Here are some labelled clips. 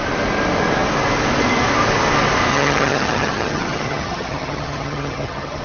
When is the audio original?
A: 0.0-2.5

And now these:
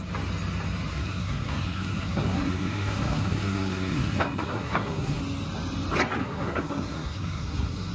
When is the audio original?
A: 0.0-0.9; 5.2-6.2

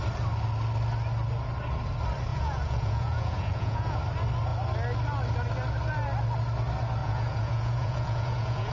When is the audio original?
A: 0.0-2.3; 4.0-7.0

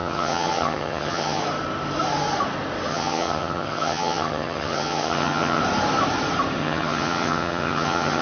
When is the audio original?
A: 1.4-2.9; 5.6-6.6

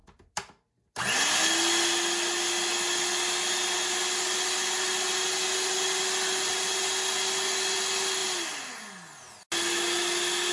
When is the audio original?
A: 0.0-10.5

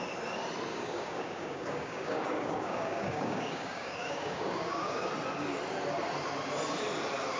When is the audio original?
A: 0.0-0.7; 5.1-7.4

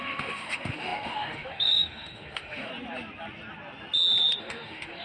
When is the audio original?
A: 2.7-4.4

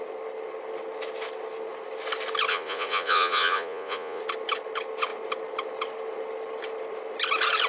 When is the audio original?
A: 0.0-2.5; 4.2-7.7